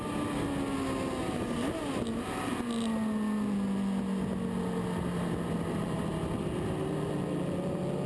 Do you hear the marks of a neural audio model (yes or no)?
no